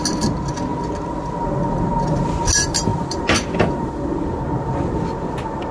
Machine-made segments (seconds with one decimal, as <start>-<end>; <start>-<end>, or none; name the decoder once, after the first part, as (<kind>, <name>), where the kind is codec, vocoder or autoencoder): none